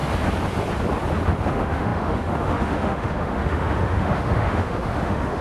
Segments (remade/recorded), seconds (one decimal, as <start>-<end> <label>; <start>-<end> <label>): 0.0-1.5 recorded; 1.5-5.4 remade